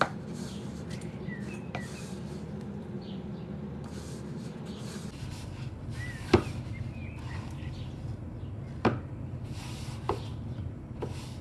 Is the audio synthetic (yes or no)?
no